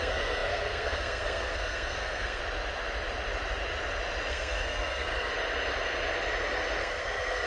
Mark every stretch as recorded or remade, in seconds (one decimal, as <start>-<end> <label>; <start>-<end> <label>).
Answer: 0.0-2.4 remade; 2.4-4.3 recorded; 4.3-5.3 remade; 5.3-6.8 recorded; 6.8-7.5 remade